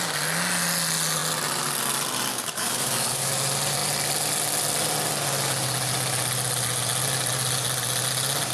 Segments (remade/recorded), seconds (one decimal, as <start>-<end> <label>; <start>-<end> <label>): 0.0-2.3 recorded; 2.3-3.3 remade; 3.3-8.5 recorded